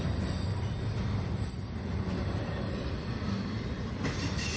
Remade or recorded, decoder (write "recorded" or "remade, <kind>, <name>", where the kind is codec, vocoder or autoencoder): recorded